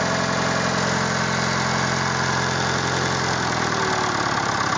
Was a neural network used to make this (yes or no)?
no